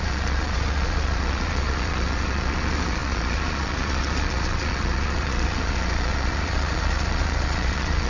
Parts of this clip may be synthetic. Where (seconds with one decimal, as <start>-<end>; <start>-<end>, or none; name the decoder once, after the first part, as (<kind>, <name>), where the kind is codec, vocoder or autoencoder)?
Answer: 0.0-8.1 (vocoder, Vocos)